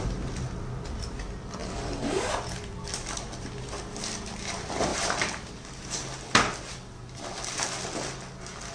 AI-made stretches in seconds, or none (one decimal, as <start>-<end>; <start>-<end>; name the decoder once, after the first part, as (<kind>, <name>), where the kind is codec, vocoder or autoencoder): 1.6-2.3 (codec, DAC)